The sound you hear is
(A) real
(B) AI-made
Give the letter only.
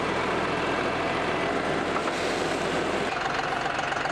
A